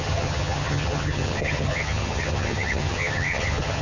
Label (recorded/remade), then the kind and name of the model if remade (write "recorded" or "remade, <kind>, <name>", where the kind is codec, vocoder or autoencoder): remade, vocoder, HiFi-GAN